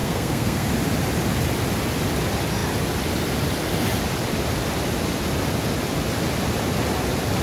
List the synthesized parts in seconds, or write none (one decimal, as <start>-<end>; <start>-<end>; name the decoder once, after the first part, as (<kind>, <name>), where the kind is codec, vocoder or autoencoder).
0.0-0.7 (codec, SNAC)